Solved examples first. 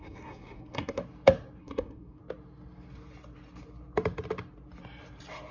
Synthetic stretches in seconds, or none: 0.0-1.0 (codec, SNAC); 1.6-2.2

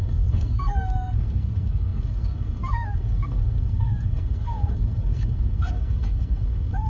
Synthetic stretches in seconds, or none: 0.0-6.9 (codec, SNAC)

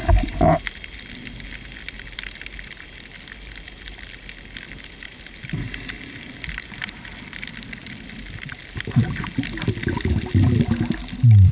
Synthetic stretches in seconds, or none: none

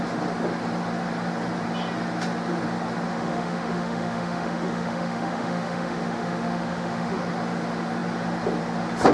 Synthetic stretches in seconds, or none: 3.1-7.3 (autoencoder, DAC-VAE)